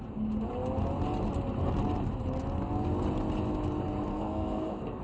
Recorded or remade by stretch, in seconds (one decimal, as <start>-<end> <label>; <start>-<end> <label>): 0.0-4.1 recorded; 4.1-5.0 remade